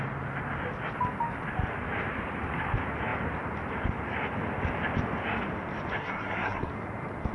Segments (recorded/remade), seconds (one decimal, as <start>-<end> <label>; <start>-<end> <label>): 0.0-6.0 recorded; 6.0-6.7 remade; 6.7-7.3 recorded